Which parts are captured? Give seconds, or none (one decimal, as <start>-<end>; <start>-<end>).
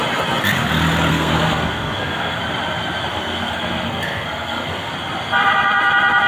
0.0-1.1; 2.4-3.1; 4.9-6.3